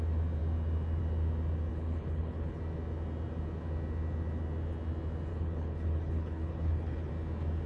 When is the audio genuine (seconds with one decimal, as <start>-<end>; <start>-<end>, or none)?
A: 0.0-1.7; 2.6-5.3; 7.1-7.7